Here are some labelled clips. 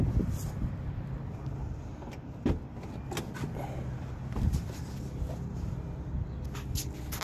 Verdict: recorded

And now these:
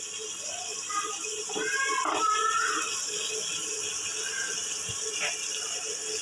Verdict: recorded